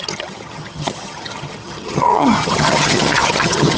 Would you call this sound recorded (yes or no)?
no